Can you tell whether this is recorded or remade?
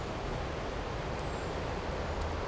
recorded